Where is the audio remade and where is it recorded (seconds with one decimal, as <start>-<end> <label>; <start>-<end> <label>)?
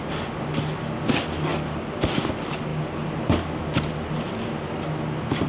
0.0-5.5 recorded